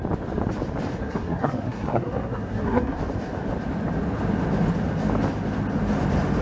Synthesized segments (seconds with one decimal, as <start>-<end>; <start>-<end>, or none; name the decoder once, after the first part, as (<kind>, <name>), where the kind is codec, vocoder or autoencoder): 1.0-3.0 (codec, SNAC)